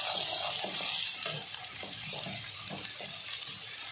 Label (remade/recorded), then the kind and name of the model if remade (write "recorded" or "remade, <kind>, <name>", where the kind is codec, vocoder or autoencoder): recorded